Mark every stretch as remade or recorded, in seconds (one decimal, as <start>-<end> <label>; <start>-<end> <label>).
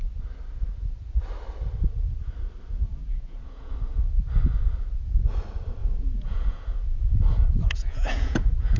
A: 0.0-3.0 recorded; 3.0-3.7 remade; 3.7-5.8 recorded; 5.8-8.8 remade